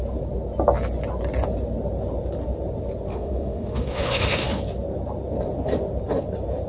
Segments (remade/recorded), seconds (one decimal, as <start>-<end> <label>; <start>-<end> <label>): 0.0-3.1 recorded; 3.1-4.6 remade; 4.6-6.7 recorded